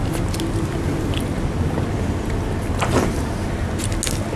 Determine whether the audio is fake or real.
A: real